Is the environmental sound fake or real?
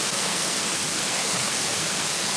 fake